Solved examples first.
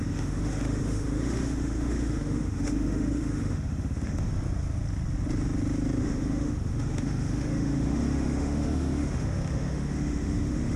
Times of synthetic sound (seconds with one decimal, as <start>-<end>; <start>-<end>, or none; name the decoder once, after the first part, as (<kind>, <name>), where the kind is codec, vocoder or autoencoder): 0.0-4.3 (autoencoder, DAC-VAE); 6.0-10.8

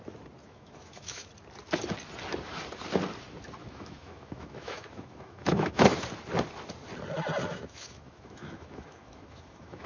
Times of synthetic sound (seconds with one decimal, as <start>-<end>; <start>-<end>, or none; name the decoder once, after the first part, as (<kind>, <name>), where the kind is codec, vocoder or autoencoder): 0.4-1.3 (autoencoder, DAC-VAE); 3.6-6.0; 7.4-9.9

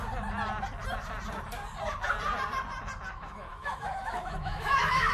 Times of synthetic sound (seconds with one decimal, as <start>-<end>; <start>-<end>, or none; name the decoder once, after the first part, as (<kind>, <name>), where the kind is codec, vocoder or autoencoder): 3.1-5.1 (autoencoder, DAC-VAE)